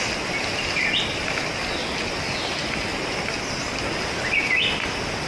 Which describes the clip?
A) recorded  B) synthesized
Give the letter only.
A